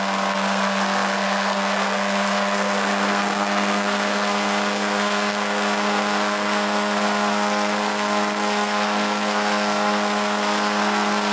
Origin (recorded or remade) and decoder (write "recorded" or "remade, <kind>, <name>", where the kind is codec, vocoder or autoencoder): remade, codec, SNAC